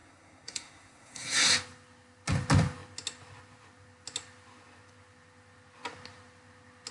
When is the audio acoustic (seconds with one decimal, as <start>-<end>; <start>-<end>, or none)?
1.5-6.9